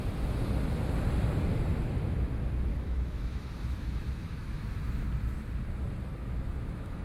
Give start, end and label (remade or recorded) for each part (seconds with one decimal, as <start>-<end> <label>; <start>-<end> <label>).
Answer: 0.0-2.7 recorded; 2.7-5.1 remade; 5.1-6.2 recorded; 6.2-7.0 remade